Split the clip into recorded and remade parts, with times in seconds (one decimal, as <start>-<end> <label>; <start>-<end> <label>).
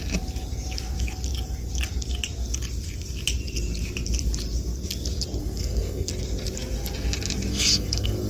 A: 0.0-5.4 recorded; 5.4-6.1 remade; 6.1-7.5 recorded; 7.5-8.3 remade